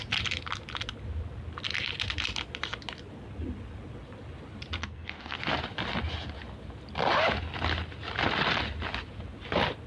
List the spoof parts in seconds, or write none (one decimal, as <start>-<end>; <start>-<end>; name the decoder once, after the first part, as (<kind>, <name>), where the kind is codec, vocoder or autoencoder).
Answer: 4.8-5.4 (codec, SNAC)